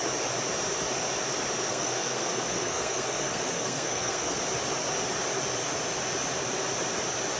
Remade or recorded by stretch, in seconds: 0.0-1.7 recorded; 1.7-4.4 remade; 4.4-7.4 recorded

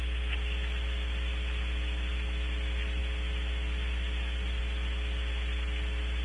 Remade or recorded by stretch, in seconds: 0.0-6.2 recorded

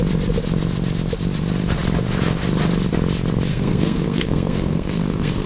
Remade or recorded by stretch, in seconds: 0.0-3.5 recorded; 3.5-5.5 remade